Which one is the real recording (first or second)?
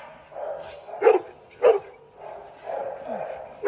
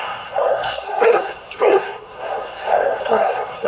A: first